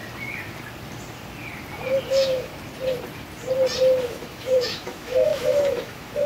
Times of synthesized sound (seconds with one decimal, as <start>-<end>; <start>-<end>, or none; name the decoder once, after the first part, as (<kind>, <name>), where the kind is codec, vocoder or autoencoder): 2.1-2.5 (autoencoder, DAC-VAE); 4.0-6.3